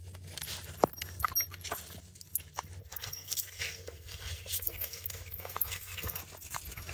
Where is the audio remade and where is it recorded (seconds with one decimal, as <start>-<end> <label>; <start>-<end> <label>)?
0.0-2.8 recorded; 2.8-6.2 remade; 6.2-6.9 recorded